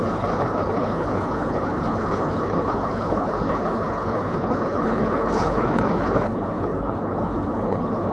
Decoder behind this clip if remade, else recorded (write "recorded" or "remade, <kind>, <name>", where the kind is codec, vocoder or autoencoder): remade, codec, HILCodec